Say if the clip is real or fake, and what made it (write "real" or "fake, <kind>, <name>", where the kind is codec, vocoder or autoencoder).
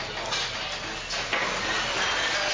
real